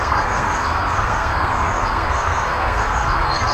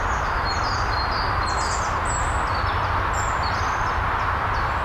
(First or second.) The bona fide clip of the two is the second